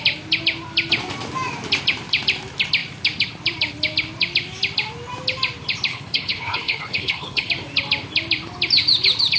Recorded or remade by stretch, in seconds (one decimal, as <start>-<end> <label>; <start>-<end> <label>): 0.0-5.9 recorded; 5.9-7.5 remade; 7.5-9.4 recorded